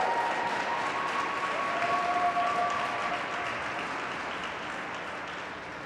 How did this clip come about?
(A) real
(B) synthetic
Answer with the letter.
A